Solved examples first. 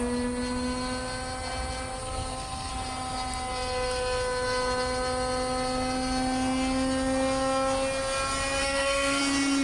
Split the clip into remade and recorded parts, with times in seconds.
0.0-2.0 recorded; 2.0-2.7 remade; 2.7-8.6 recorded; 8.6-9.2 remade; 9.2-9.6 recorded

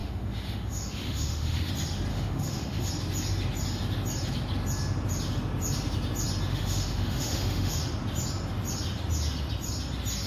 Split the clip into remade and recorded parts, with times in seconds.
0.0-1.7 remade; 1.7-2.1 recorded; 2.1-2.9 remade; 2.9-6.5 recorded; 6.5-7.8 remade; 7.8-10.3 recorded

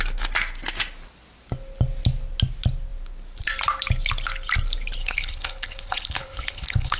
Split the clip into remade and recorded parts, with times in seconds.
0.0-5.0 recorded; 5.0-7.0 remade

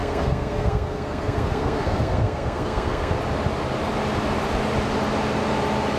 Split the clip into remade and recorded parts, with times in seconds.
0.0-3.1 remade; 3.1-6.0 recorded

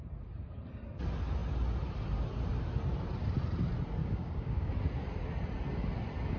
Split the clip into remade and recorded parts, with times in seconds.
0.0-4.0 recorded; 4.0-4.7 remade; 4.7-6.4 recorded

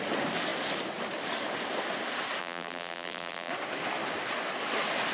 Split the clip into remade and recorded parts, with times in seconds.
0.0-2.4 recorded; 2.4-3.5 remade; 3.5-5.1 recorded

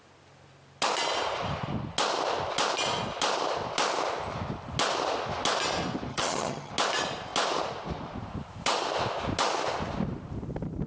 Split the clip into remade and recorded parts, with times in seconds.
0.0-6.1 recorded; 6.1-6.7 remade; 6.7-10.9 recorded

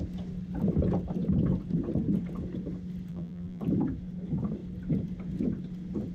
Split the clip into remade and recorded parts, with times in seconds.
0.0-3.1 recorded; 3.1-3.6 remade; 3.6-6.1 recorded